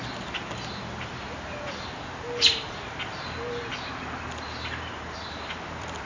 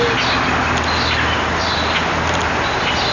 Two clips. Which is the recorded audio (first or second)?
second